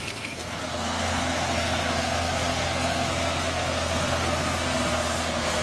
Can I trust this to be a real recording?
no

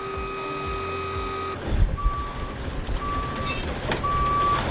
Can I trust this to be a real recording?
yes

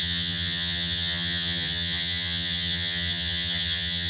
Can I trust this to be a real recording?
no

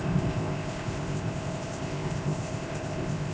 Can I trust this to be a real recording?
no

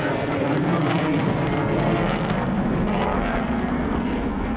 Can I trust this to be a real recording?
no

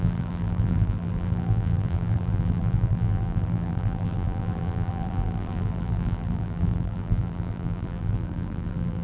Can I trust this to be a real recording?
no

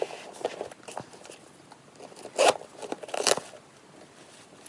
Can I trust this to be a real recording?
yes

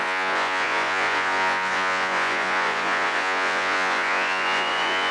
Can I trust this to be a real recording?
no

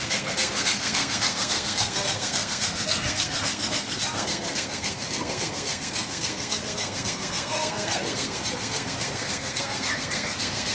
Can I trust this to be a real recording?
no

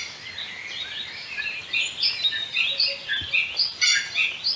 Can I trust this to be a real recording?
yes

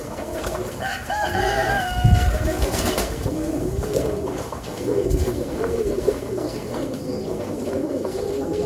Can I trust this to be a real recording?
no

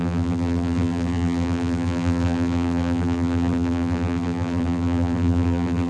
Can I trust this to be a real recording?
no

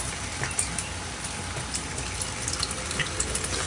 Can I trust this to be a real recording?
yes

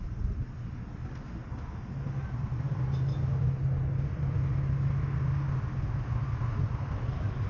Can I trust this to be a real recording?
yes